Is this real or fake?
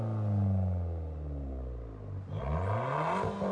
real